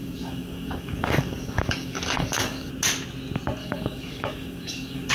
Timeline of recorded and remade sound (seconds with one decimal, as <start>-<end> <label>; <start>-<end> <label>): 0.0-2.7 remade; 2.7-3.6 recorded; 3.6-5.1 remade